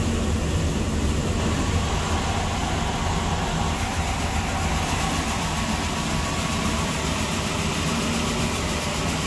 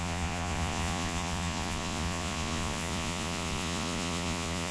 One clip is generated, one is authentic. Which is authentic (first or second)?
first